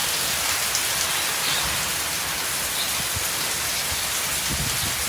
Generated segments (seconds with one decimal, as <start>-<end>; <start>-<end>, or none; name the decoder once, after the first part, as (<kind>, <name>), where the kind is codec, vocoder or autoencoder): none